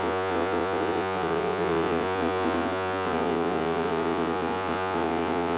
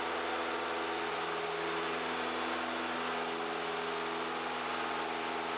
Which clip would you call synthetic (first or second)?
first